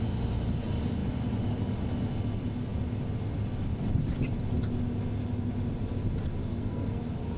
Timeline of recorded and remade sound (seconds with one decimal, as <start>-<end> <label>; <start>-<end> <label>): 0.0-6.4 recorded; 6.4-7.0 remade; 7.0-7.4 recorded